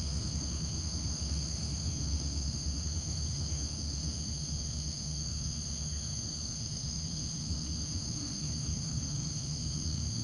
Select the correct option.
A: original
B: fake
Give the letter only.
B